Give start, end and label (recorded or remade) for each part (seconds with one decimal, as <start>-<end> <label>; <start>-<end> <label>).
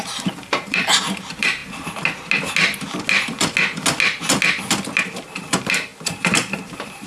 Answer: 0.0-1.6 remade; 1.6-5.0 recorded; 5.0-7.1 remade